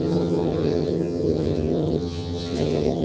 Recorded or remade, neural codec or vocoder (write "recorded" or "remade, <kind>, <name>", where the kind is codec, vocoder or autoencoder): remade, vocoder, HiFi-GAN